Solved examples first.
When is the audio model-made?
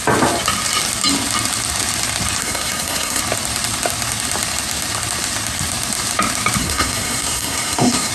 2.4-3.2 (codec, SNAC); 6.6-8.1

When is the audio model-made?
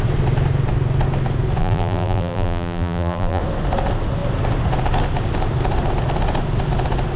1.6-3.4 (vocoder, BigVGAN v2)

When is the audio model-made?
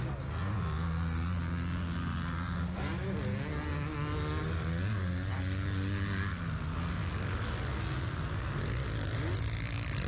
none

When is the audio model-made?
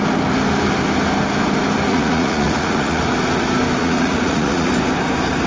1.9-3.0 (vocoder, Vocos); 3.8-4.7